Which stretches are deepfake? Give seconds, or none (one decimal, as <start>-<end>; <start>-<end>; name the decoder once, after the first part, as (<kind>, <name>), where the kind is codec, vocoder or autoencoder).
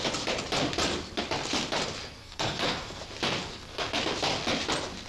2.2-3.0 (codec, SNAC); 3.4-3.9